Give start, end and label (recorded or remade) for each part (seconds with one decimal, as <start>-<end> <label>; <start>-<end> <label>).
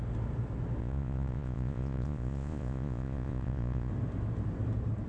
0.0-0.8 recorded; 0.8-3.9 remade; 3.9-5.1 recorded